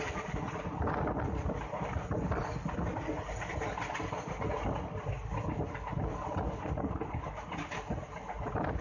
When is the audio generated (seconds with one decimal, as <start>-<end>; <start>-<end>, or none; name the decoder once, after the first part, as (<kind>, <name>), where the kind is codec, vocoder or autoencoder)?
none